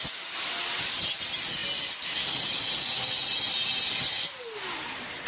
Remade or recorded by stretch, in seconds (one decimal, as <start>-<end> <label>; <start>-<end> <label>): 0.0-5.3 recorded